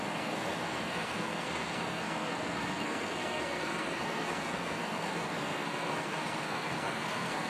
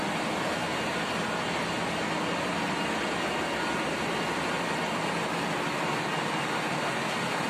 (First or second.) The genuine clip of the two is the second